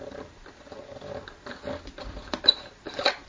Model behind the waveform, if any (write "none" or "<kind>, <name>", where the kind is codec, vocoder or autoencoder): none